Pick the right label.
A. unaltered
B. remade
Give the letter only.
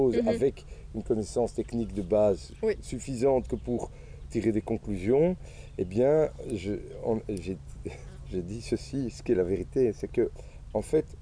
A